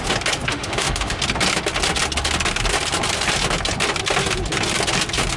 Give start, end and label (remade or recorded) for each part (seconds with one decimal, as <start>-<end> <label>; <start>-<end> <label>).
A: 0.0-0.5 recorded; 0.5-1.2 remade; 1.2-5.4 recorded